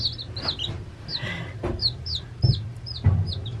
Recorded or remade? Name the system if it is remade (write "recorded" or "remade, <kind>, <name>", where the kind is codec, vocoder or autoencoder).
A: remade, vocoder, BigVGAN v2